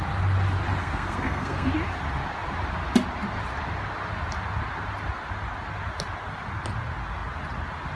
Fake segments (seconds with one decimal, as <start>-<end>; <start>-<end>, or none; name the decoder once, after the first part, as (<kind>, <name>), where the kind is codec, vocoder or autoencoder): 0.8-1.7 (codec, SNAC)